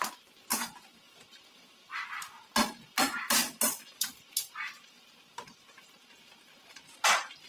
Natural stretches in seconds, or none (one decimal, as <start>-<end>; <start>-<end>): 0.0-7.5